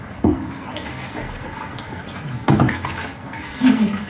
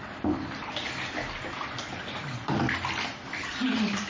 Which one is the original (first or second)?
second